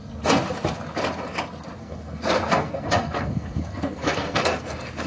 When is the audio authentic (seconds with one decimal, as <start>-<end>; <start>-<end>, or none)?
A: 0.0-1.8